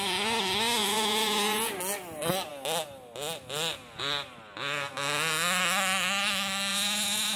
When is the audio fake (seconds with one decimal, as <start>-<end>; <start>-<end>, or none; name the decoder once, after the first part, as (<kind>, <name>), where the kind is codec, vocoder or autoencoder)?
0.8-1.7 (vocoder, Vocos); 6.7-7.4